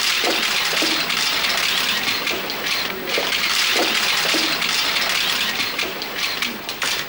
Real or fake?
real